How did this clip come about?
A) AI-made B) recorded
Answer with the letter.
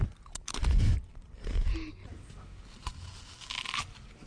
B